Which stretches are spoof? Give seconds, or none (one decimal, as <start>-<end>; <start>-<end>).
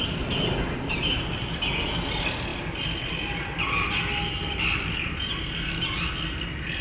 none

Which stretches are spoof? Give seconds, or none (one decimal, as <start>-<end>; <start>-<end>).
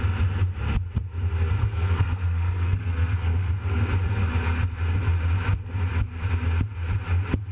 1.6-3.9